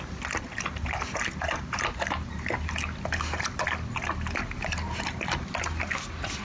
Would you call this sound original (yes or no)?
yes